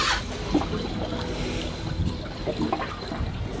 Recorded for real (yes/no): yes